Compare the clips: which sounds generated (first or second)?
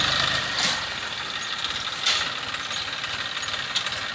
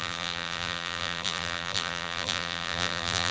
second